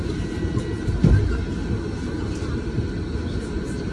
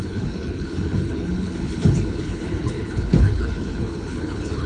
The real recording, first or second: first